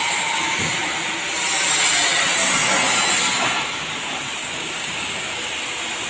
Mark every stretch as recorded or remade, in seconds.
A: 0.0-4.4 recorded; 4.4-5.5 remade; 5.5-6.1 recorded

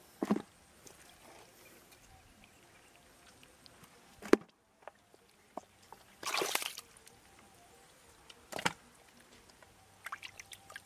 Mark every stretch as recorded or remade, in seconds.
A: 0.0-10.9 recorded

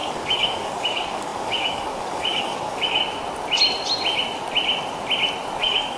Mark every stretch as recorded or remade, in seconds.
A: 0.0-3.0 remade; 3.0-5.6 recorded; 5.6-6.0 remade

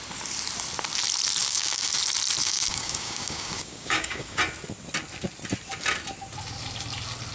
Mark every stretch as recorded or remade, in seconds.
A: 0.0-1.4 recorded; 1.4-2.0 remade; 2.0-2.4 recorded; 2.4-4.4 remade; 4.4-7.3 recorded

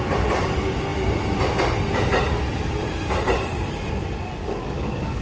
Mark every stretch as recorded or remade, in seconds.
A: 0.0-4.4 recorded; 4.4-5.2 remade